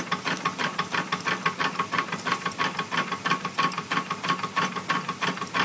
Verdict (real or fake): fake